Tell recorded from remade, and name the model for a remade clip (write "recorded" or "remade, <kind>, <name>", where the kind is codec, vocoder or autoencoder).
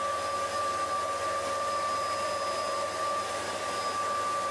recorded